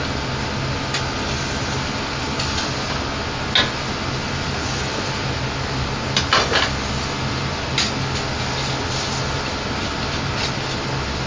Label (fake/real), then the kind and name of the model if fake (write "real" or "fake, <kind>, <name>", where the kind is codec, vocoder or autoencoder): real